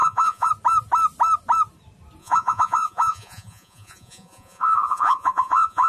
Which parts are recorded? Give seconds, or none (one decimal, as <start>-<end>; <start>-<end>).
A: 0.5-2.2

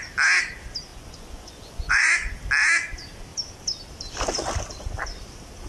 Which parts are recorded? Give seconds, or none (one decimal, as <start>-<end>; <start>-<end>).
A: 0.0-0.9; 2.3-5.7

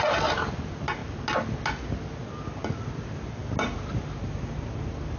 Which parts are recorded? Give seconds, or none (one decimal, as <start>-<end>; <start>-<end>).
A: 0.0-5.2